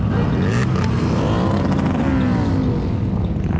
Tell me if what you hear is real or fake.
real